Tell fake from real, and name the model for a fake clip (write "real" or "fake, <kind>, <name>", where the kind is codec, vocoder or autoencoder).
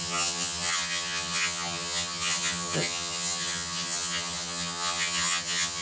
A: fake, vocoder, HiFi-GAN